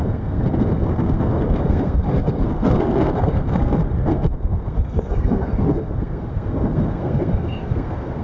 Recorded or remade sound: remade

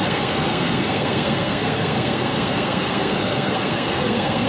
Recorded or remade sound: remade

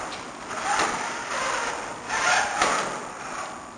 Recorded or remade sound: recorded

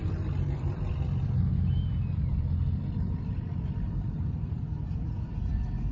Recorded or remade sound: remade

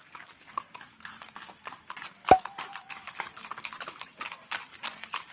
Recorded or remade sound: recorded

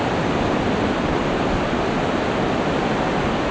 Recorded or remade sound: recorded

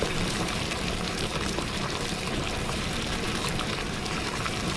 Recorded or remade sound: remade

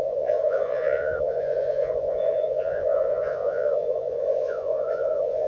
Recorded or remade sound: remade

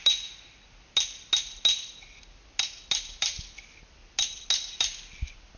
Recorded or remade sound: recorded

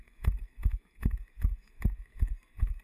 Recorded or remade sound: remade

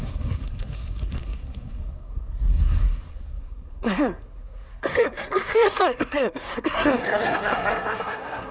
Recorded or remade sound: remade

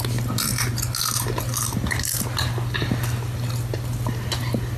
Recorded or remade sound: recorded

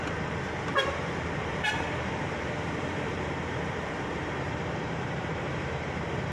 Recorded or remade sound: remade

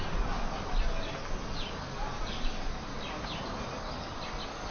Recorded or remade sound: recorded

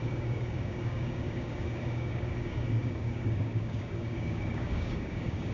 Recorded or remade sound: remade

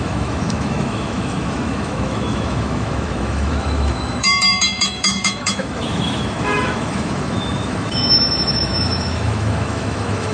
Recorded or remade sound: remade